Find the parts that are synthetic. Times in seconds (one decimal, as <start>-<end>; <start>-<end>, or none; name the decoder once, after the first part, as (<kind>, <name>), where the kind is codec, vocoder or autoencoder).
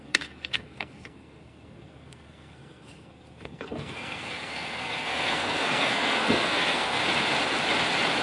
0.0-7.0 (codec, SNAC)